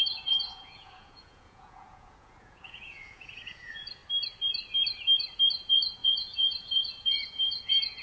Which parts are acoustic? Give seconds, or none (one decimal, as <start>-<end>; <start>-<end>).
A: 4.0-5.5